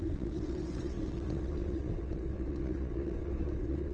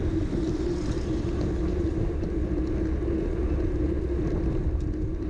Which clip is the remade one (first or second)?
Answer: first